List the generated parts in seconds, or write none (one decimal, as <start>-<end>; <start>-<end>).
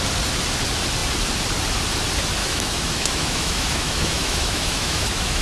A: 2.4-5.4